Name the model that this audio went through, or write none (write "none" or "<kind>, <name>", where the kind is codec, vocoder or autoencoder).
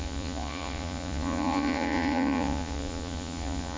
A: vocoder, Vocos